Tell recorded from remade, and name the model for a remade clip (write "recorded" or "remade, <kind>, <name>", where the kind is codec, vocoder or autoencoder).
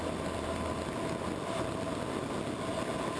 recorded